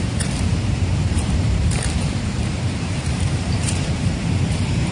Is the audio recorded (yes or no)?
no